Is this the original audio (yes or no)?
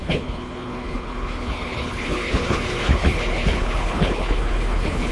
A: no